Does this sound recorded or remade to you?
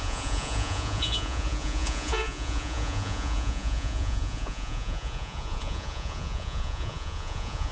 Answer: remade